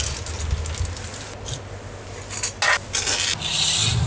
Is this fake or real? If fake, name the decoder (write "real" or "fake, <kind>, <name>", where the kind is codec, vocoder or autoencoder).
real